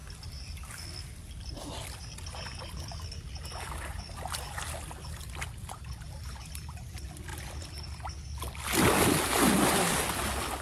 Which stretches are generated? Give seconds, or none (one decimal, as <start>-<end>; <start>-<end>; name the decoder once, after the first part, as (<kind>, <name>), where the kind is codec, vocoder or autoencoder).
none